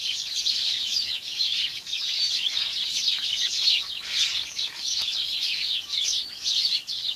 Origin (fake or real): fake